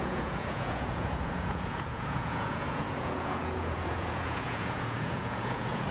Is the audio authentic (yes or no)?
no